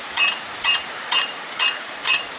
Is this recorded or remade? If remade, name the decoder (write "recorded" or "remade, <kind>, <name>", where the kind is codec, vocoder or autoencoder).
remade, vocoder, Vocos